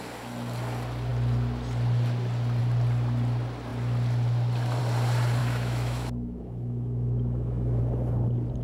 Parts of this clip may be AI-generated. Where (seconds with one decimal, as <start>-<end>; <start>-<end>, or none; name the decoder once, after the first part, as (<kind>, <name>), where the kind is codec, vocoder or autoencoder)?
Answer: 5.4-7.8 (autoencoder, DAC-VAE)